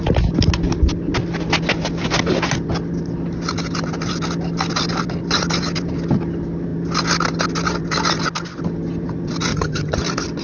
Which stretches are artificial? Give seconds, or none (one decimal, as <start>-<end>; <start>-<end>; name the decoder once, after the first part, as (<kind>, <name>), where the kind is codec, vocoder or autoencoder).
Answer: 9.5-10.0 (vocoder, HiFi-GAN)